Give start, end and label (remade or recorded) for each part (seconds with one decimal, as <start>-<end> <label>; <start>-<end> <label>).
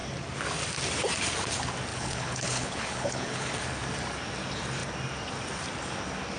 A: 0.0-1.9 recorded; 1.9-3.5 remade; 3.5-6.4 recorded